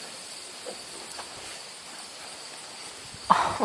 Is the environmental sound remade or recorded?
remade